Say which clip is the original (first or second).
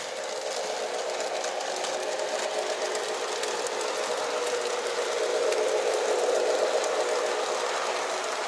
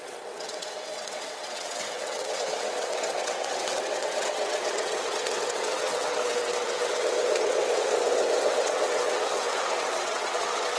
first